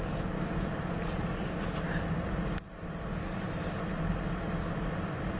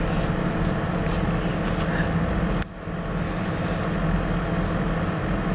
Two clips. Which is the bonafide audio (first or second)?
second